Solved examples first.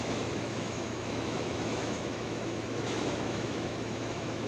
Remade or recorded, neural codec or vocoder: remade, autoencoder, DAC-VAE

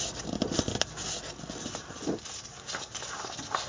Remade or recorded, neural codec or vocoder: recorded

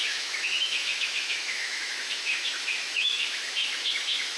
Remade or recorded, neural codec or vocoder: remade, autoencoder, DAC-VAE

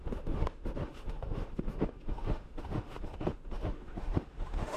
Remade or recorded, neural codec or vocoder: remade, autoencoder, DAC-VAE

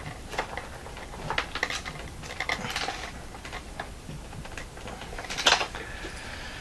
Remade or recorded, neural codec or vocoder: recorded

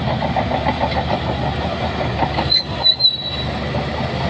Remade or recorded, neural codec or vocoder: recorded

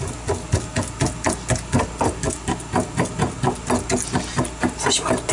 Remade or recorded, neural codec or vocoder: recorded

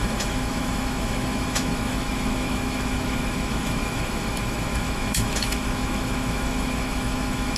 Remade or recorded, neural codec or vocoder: remade, autoencoder, DAC-VAE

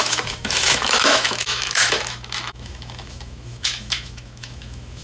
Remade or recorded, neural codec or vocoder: remade, autoencoder, DAC-VAE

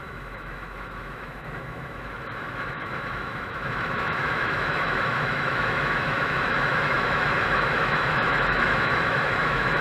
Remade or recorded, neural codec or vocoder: remade, autoencoder, DAC-VAE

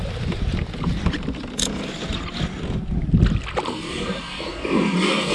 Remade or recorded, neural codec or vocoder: recorded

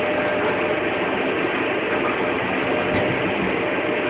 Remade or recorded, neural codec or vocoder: recorded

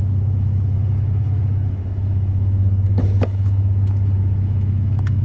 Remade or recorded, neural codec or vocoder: remade, autoencoder, DAC-VAE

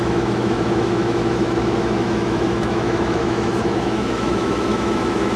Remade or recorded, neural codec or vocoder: remade, autoencoder, DAC-VAE